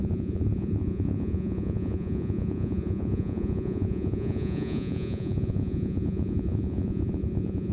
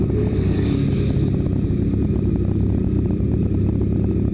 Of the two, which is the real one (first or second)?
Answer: second